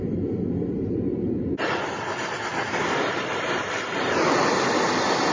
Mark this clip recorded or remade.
remade